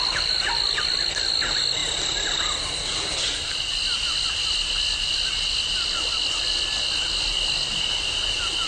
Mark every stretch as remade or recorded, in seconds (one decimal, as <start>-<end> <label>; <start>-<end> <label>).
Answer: 0.0-8.7 recorded